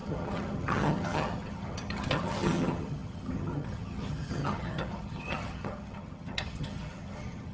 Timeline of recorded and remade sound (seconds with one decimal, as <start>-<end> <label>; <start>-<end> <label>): 0.0-7.5 remade